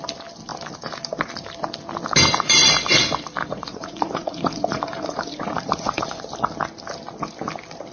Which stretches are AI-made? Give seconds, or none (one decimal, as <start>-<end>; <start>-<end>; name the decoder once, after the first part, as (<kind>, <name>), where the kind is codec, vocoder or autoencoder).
3.4-6.2 (vocoder, Vocos)